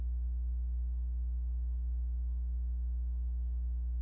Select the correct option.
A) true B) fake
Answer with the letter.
A